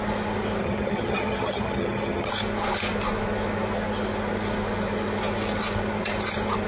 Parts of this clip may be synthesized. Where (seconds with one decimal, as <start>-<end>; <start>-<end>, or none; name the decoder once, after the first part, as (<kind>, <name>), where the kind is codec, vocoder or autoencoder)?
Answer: 0.6-2.3 (vocoder, HiFi-GAN)